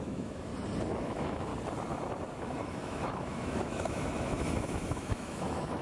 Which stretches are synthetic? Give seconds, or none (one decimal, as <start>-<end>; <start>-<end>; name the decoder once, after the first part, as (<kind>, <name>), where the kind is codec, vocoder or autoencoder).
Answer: 0.0-0.5 (autoencoder, DAC-VAE); 1.0-1.5; 2.4-5.8